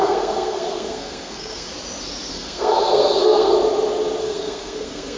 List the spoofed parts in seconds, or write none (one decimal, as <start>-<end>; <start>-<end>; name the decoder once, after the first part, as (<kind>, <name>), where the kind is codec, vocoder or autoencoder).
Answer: 0.0-1.7 (codec, SNAC); 2.3-3.5; 4.2-5.2